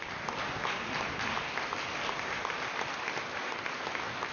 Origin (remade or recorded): recorded